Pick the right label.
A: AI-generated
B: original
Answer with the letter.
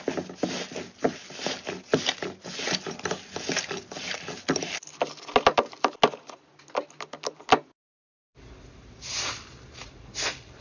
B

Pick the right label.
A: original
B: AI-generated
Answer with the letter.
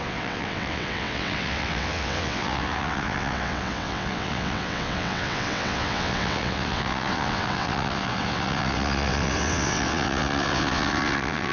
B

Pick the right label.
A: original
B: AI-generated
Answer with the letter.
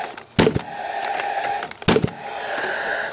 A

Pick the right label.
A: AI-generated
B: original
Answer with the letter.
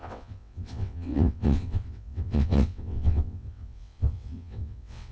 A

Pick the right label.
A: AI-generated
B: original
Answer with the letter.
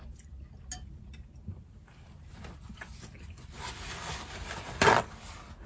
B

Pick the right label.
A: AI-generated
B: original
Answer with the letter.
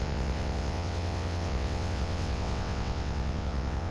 A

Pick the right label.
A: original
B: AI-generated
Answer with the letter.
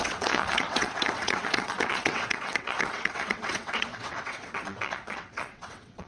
B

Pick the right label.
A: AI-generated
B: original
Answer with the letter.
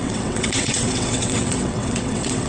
A